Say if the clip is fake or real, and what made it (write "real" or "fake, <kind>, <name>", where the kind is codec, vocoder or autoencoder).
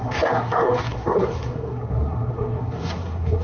fake, codec, SNAC